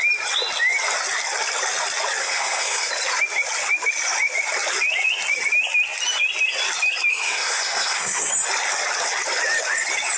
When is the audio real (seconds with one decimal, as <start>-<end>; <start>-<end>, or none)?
0.0-2.2; 2.9-7.1; 8.3-10.2